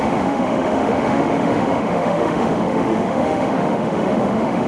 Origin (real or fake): fake